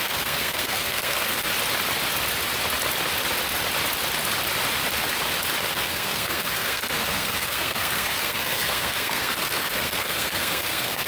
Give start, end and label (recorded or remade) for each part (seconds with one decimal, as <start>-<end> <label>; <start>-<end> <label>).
0.0-1.5 remade; 1.5-5.7 recorded; 5.7-11.1 remade